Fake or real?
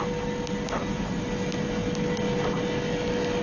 real